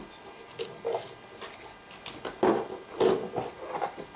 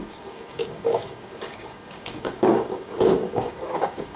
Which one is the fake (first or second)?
second